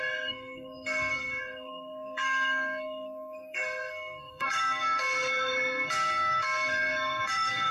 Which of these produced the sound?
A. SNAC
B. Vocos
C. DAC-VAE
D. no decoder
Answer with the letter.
A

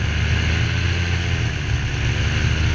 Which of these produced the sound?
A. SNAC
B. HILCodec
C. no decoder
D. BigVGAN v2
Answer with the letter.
C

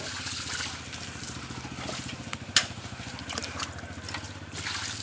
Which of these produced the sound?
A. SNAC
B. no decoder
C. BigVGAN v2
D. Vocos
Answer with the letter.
B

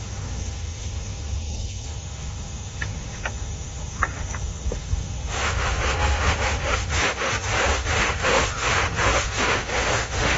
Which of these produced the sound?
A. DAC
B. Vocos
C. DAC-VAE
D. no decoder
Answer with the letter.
C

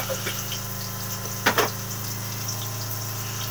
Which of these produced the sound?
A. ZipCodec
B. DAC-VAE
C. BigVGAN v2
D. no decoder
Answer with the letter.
D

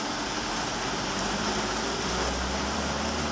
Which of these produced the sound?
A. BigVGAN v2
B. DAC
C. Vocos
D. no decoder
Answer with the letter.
A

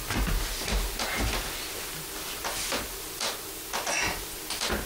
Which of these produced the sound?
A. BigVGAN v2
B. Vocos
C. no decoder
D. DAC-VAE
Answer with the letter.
C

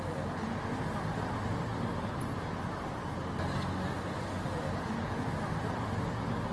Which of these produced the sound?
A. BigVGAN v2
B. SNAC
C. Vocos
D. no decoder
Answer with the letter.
D